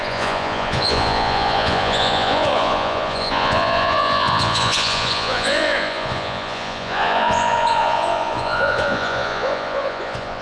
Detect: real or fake fake